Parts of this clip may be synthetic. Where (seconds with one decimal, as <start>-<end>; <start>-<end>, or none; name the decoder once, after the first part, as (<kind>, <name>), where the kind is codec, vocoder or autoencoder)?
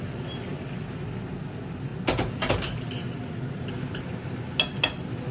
0.5-1.0 (vocoder, BigVGAN v2)